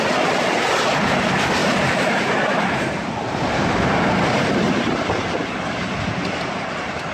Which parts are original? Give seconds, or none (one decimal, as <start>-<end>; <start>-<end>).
0.0-1.6; 5.1-7.1